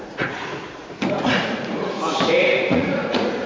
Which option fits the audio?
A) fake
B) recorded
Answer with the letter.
A